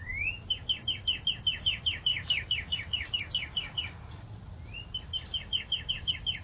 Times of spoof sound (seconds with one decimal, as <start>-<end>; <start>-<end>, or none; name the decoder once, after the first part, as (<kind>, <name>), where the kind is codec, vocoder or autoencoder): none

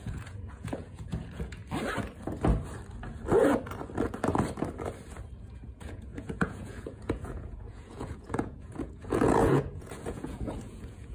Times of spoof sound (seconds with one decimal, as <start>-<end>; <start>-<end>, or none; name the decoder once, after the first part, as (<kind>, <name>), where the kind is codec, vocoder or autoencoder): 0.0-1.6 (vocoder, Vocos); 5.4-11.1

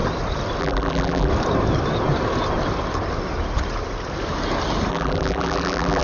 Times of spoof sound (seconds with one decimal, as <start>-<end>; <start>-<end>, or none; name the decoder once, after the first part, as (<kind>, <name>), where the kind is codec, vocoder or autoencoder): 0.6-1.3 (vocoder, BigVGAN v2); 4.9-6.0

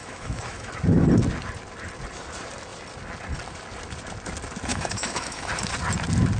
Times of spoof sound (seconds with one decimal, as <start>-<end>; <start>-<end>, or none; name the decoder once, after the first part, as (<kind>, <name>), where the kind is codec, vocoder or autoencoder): 0.0-0.7 (autoencoder, DAC-VAE); 4.7-5.5